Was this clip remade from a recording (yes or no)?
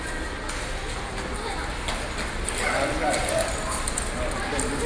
no